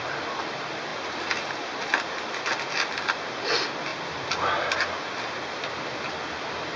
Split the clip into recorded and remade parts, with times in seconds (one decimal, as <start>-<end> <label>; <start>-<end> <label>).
0.0-6.8 recorded